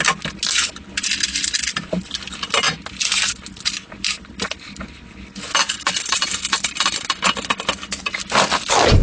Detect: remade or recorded recorded